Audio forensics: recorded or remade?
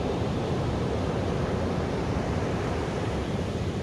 remade